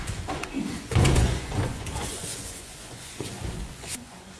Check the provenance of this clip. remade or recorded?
remade